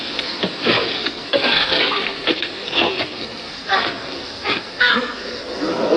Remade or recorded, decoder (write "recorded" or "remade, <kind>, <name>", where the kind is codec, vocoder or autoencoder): remade, codec, SNAC